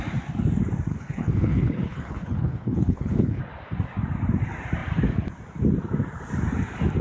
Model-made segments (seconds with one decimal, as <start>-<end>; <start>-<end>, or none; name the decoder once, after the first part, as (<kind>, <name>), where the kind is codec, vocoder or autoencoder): 0.9-3.4 (codec, HILCodec)